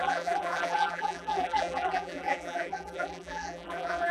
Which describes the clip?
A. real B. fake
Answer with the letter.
B